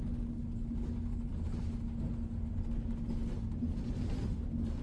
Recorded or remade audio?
recorded